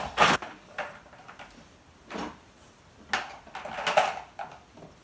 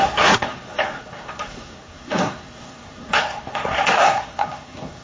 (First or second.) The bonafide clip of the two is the first